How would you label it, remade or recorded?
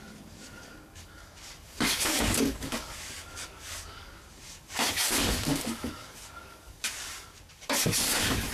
remade